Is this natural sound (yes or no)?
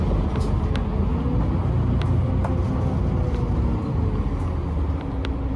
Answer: yes